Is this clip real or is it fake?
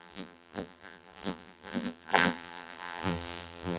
fake